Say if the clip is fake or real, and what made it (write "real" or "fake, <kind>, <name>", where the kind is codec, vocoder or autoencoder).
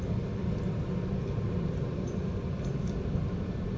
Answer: real